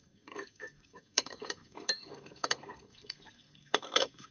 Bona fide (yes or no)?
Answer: no